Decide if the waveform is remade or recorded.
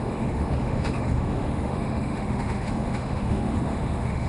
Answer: remade